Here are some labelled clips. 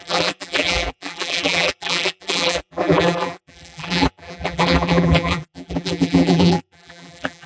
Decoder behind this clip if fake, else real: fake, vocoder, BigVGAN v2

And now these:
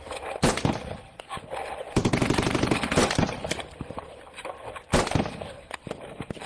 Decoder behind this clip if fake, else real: real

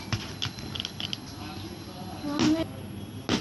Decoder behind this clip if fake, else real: real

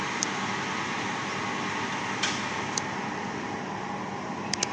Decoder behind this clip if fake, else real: real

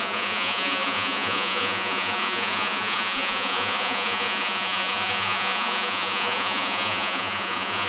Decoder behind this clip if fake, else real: fake, vocoder, Vocos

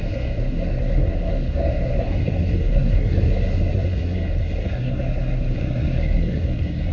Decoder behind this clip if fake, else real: fake, codec, SNAC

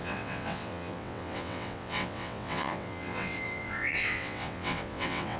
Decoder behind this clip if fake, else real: fake, vocoder, WaveNeXt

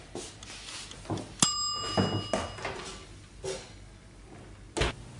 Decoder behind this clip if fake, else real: real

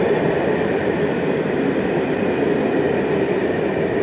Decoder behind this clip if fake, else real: real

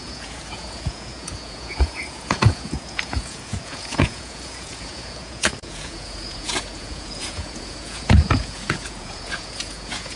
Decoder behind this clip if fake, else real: fake, vocoder, Vocos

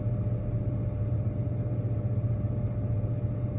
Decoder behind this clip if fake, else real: real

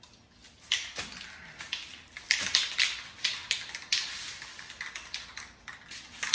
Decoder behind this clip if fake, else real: real